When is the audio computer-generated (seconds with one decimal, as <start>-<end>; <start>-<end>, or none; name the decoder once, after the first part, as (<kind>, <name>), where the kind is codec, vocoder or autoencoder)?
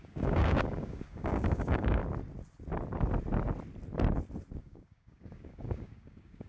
0.0-2.0 (codec, DAC); 4.6-6.5